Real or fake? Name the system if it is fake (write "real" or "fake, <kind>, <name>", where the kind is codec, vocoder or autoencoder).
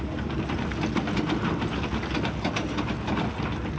real